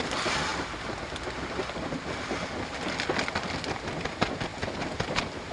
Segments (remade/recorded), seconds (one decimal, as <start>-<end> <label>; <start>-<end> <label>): 0.0-5.5 recorded